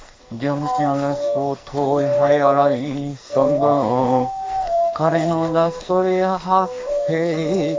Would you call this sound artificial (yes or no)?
yes